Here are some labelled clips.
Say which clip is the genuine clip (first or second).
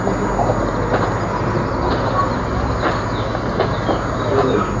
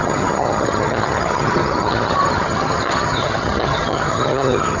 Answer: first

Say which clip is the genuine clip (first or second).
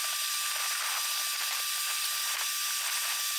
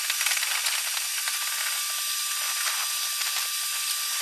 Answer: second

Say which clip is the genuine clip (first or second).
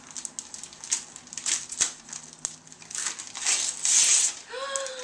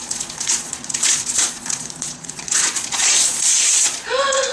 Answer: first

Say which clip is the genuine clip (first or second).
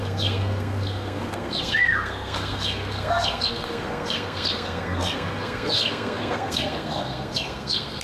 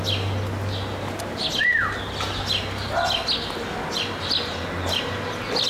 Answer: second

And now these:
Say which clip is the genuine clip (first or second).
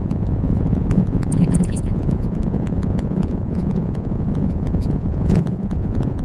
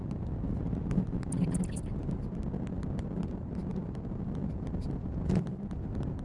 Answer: second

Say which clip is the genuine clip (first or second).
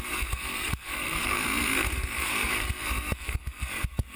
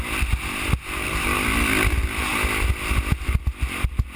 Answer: second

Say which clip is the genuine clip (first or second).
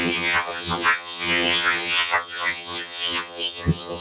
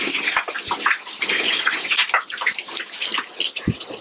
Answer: second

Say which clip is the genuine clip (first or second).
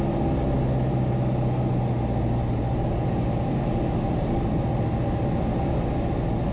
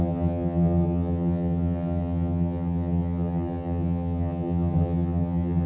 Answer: first